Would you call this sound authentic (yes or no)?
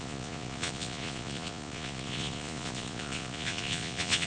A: no